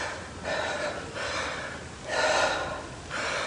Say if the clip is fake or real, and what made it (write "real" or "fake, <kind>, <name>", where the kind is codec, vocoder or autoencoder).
real